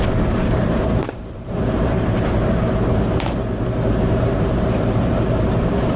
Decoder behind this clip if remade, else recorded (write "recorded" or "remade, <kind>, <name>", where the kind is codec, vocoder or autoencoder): remade, vocoder, BigVGAN v2